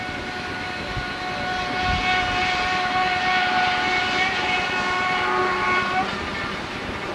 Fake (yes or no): no